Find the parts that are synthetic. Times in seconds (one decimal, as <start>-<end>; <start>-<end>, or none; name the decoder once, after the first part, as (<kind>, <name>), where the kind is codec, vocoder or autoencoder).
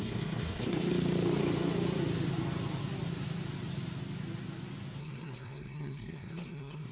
0.0-0.9 (codec, SNAC); 5.0-6.9